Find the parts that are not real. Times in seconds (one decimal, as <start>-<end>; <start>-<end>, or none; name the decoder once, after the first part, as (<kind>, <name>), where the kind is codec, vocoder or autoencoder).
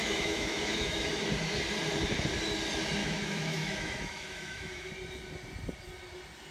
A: 0.0-1.2 (autoencoder, DAC-VAE); 3.0-4.9